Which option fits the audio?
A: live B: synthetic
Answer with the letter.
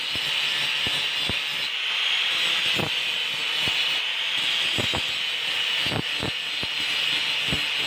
A